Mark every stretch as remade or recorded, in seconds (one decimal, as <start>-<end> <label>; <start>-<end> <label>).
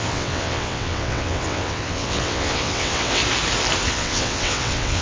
0.0-3.2 remade; 3.2-3.9 recorded; 3.9-5.0 remade